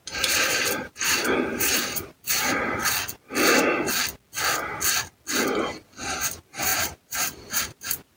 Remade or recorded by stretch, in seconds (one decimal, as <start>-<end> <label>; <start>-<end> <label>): 0.0-2.8 remade; 2.8-6.0 recorded; 6.0-8.2 remade